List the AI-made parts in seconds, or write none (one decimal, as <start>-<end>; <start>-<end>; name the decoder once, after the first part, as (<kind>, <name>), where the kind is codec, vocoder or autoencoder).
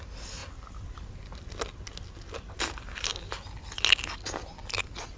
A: none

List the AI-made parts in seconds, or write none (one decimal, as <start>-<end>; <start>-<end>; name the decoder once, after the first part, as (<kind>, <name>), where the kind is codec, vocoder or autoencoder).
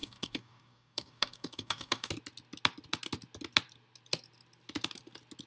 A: 0.0-2.1 (codec, DAC)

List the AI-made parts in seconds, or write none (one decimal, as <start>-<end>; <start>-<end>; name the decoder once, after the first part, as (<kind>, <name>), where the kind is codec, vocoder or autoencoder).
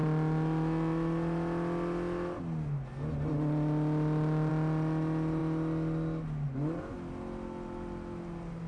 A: none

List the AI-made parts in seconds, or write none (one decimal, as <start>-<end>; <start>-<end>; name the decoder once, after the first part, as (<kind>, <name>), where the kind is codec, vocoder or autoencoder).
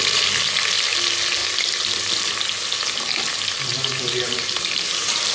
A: 3.7-5.3 (vocoder, BigVGAN v2)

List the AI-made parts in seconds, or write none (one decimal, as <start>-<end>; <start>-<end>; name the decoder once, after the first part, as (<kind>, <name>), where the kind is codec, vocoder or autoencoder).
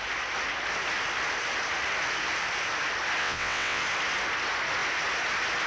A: 3.2-3.8 (vocoder, WaveNeXt)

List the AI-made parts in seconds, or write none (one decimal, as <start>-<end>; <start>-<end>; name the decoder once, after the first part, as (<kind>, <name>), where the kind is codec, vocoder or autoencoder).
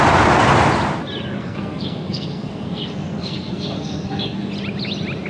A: 1.3-4.5 (codec, SNAC)